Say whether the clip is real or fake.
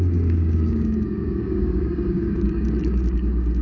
fake